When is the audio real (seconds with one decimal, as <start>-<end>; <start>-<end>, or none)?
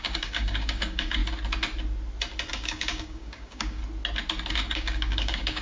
1.2-2.5; 3.8-4.5